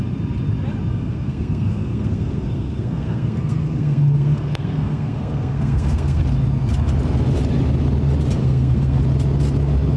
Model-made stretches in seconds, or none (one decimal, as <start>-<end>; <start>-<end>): 0.9-6.2; 8.4-9.0